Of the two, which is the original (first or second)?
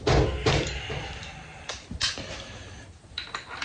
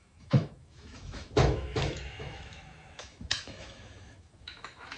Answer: first